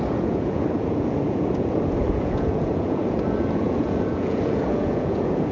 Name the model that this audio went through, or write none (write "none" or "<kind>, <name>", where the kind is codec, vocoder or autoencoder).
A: vocoder, Vocos